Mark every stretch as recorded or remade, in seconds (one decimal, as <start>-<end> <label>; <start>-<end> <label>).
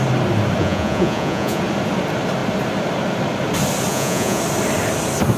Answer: 0.0-0.6 recorded; 0.6-1.6 remade; 1.6-3.9 recorded; 3.9-4.4 remade; 4.4-5.4 recorded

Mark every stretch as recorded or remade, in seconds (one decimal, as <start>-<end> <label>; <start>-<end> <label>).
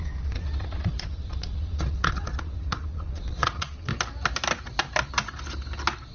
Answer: 0.0-3.9 remade; 3.9-6.1 recorded